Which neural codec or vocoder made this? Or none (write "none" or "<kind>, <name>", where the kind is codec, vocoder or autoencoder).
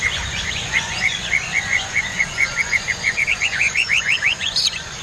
vocoder, Vocos